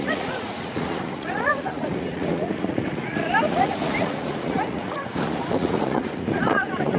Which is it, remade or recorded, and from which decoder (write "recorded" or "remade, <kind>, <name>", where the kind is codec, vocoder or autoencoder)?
remade, vocoder, Vocos